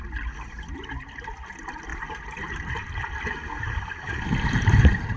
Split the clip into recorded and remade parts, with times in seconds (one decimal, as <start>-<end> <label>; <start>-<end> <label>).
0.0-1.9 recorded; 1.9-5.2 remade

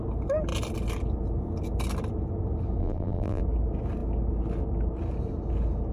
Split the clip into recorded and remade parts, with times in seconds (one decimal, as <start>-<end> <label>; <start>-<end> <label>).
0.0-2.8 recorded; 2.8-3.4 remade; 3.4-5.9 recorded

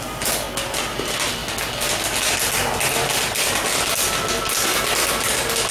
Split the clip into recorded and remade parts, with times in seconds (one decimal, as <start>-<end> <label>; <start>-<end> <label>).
0.0-5.7 recorded

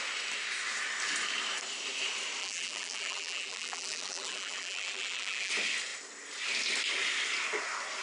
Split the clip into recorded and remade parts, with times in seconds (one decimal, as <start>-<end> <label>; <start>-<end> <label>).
0.0-2.4 recorded; 2.4-5.5 remade; 5.5-8.0 recorded

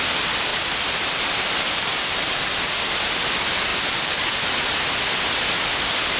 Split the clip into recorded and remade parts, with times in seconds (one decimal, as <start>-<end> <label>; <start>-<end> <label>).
0.0-0.5 recorded; 0.5-3.2 remade; 3.2-3.7 recorded; 3.7-4.5 remade; 4.5-6.2 recorded

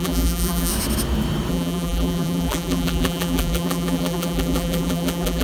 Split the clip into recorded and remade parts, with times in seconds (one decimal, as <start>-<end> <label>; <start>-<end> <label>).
0.0-0.7 remade; 0.7-1.5 recorded; 1.5-5.4 remade